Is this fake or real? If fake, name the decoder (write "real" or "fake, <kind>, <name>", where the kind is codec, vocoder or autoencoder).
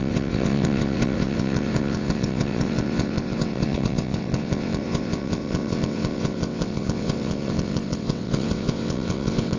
fake, vocoder, WaveNeXt